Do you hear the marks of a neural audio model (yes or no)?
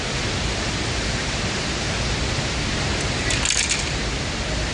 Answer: no